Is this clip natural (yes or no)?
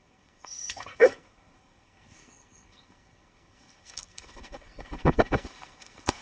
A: no